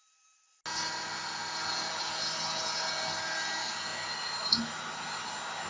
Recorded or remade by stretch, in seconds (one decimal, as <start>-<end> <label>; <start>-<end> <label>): 0.0-5.7 recorded

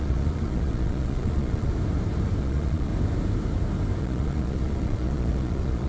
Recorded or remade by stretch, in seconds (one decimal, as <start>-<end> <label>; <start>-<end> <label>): 0.0-1.7 remade; 1.7-2.4 recorded; 2.4-2.9 remade; 2.9-4.0 recorded; 4.0-5.9 remade